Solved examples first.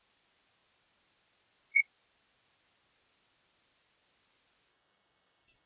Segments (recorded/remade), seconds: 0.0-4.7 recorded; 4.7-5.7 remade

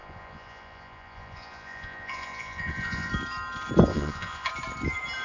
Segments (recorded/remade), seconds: 0.0-3.1 remade; 3.1-3.9 recorded; 3.9-4.5 remade; 4.5-5.2 recorded

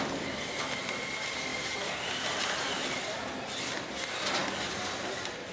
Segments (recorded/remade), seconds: 0.0-5.5 recorded

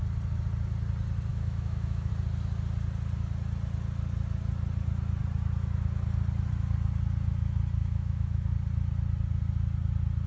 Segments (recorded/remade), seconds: 0.0-1.3 recorded; 1.3-2.1 remade; 2.1-7.8 recorded; 7.8-8.5 remade; 8.5-10.3 recorded

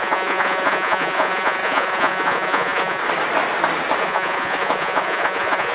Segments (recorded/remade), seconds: 0.0-3.0 remade; 3.0-4.0 recorded; 4.0-5.7 remade

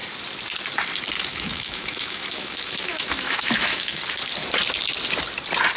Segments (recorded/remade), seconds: 0.0-1.3 recorded; 1.3-4.0 remade; 4.0-5.8 recorded